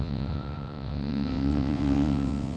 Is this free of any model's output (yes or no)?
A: no